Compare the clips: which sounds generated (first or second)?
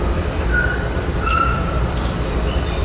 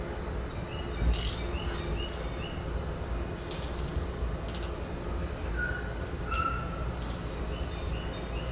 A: first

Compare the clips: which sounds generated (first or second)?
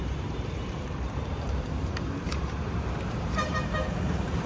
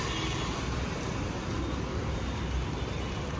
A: first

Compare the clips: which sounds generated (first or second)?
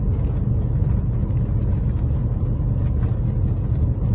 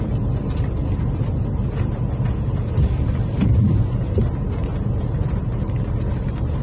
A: second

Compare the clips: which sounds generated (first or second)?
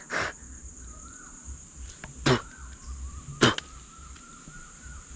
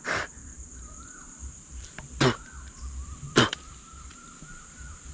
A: second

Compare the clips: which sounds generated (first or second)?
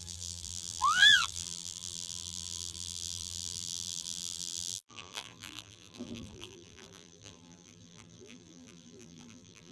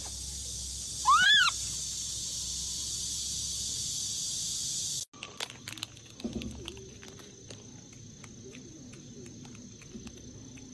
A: first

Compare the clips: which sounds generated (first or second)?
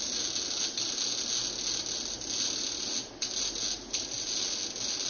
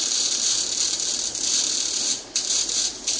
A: second